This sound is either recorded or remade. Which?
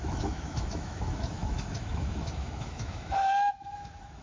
remade